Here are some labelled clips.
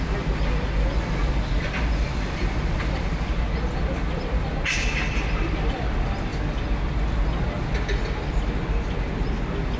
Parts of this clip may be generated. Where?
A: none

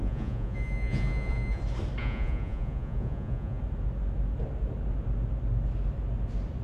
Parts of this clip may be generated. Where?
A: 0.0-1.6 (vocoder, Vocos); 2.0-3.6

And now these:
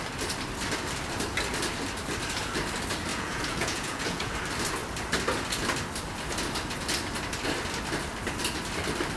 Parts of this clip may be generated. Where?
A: 3.1-4.3 (vocoder, Vocos)

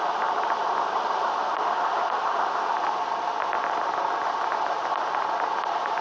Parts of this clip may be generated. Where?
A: none